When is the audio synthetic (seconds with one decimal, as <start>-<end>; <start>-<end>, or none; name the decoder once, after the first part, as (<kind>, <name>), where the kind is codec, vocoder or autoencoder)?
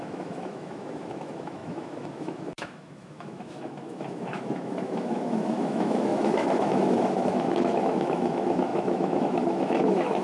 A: 0.0-10.2 (autoencoder, DAC-VAE)